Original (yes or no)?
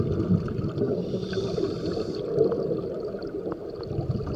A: yes